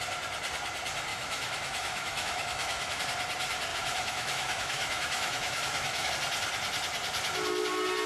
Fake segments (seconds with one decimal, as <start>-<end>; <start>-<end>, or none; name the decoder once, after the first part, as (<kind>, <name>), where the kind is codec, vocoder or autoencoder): 1.1-3.0 (autoencoder, DAC-VAE); 3.7-6.1